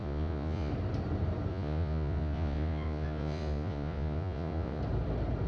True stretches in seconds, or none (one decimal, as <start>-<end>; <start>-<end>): 0.7-1.5; 4.8-5.5